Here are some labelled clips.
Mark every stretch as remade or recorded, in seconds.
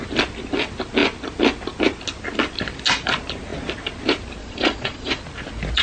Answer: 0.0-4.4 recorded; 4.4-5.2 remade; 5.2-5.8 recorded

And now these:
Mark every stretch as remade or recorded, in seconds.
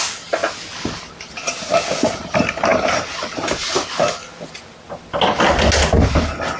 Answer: 0.0-6.6 recorded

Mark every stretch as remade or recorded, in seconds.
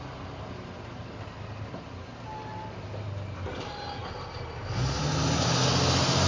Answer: 0.0-6.3 recorded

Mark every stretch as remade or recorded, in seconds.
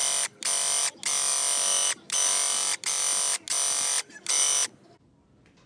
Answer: 0.0-5.7 recorded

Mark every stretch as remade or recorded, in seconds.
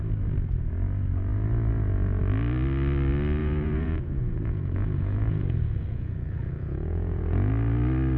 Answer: 0.0-3.4 recorded; 3.4-7.5 remade; 7.5-8.2 recorded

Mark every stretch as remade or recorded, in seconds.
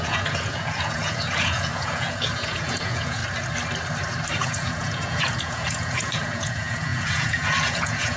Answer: 0.0-3.2 remade; 3.2-4.3 recorded; 4.3-8.2 remade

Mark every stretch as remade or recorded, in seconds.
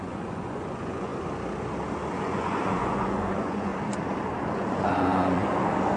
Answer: 0.0-1.1 remade; 1.1-2.1 recorded; 2.1-3.7 remade; 3.7-4.5 recorded; 4.5-5.4 remade; 5.4-6.0 recorded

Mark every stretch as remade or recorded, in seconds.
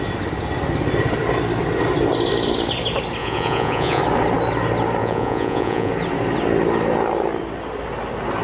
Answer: 0.0-3.2 recorded; 3.2-4.0 remade; 4.0-5.0 recorded; 5.0-5.9 remade; 5.9-8.4 recorded